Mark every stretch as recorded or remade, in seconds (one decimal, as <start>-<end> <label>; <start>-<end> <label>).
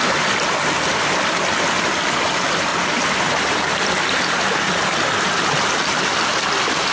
0.0-2.7 recorded; 2.7-3.7 remade; 3.7-6.9 recorded